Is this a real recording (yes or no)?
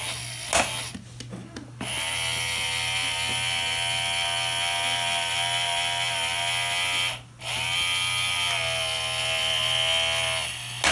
yes